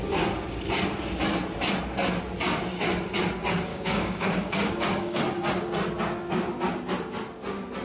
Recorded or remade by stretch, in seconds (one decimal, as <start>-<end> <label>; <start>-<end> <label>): 0.0-3.7 recorded; 3.7-5.2 remade; 5.2-7.8 recorded

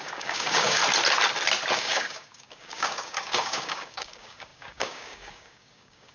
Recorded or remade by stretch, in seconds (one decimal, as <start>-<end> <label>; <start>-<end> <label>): 0.0-0.8 remade; 0.8-1.7 recorded; 1.7-6.1 remade

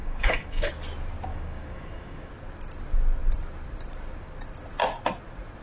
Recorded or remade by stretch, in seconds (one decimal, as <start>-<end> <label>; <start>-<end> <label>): 0.0-0.7 remade; 0.7-1.3 recorded; 1.3-2.3 remade; 2.3-5.6 recorded